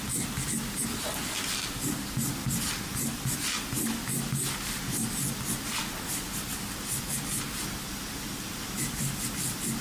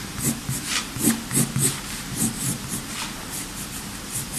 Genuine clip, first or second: first